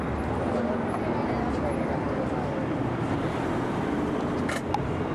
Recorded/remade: recorded